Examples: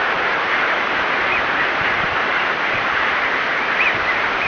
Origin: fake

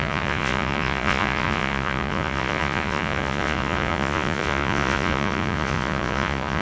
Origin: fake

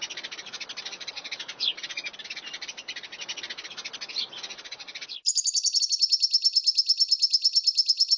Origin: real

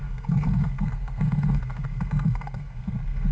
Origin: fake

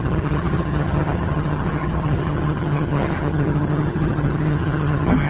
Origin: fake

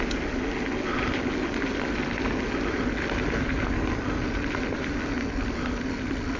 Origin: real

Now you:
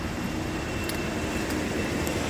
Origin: real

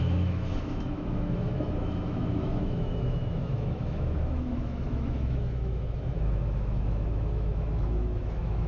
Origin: fake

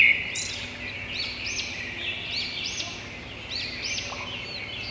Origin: real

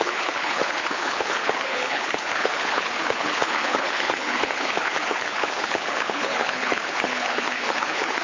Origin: fake